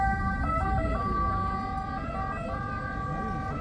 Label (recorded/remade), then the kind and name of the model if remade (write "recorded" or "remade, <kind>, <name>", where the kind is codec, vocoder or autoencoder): recorded